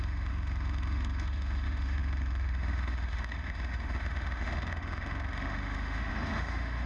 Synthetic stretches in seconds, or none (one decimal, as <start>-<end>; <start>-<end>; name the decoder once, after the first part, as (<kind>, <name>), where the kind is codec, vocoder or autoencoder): 0.0-6.9 (autoencoder, DAC-VAE)